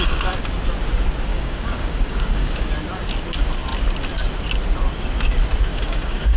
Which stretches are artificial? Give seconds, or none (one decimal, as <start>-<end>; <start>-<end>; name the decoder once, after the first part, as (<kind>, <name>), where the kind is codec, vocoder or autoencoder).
1.3-2.7 (codec, DAC); 5.7-6.4